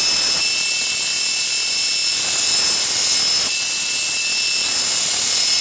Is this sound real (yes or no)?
yes